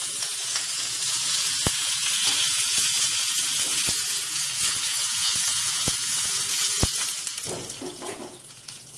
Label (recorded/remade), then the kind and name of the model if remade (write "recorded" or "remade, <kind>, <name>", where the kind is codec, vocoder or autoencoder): remade, vocoder, Vocos